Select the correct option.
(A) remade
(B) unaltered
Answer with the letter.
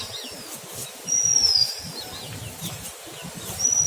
B